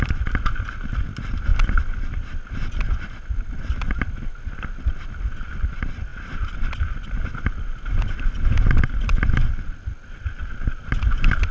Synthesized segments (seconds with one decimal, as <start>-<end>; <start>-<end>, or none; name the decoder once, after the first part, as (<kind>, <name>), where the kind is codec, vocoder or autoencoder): none

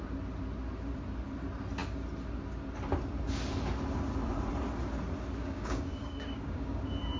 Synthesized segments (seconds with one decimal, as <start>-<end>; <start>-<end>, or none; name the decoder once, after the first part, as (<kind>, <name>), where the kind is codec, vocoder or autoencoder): 5.4-6.8 (codec, DAC)

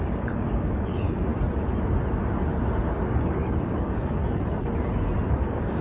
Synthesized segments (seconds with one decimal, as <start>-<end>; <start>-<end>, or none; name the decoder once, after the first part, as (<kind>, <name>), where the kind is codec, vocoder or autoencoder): 0.0-1.3 (codec, DAC); 2.9-4.2; 5.3-5.8

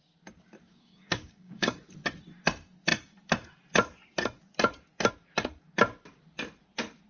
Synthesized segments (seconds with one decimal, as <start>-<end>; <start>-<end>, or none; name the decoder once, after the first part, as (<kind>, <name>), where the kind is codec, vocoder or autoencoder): 0.7-1.8 (codec, DAC)

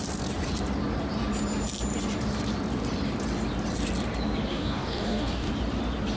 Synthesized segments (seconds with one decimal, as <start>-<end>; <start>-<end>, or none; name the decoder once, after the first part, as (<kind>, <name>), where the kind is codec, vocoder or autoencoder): 4.5-5.5 (codec, DAC)